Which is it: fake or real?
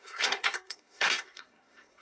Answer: fake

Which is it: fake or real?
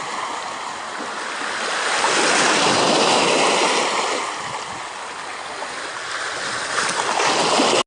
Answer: real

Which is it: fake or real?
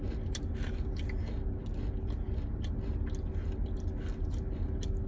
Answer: real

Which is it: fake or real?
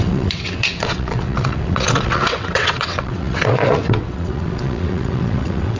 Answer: fake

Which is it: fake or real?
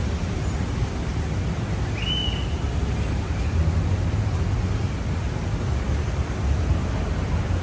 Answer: real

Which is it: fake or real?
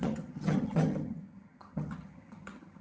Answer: fake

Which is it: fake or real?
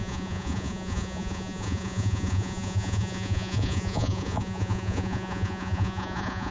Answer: fake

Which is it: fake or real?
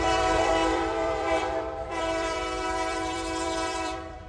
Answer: fake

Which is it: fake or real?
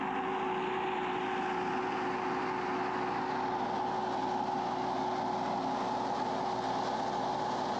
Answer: real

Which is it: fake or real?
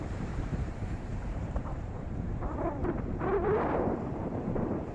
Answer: fake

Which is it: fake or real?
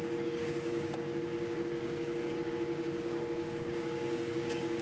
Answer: fake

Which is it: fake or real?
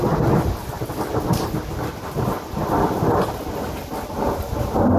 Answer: real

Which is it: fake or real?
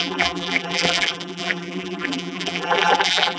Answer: fake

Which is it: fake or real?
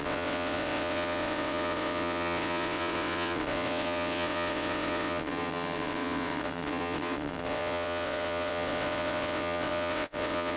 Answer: fake